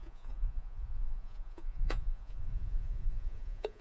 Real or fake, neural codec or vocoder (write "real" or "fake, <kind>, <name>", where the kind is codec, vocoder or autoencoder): fake, vocoder, Vocos